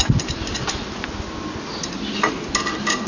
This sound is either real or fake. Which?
real